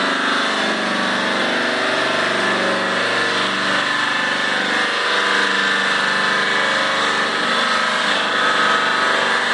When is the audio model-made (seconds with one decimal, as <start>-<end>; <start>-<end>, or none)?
none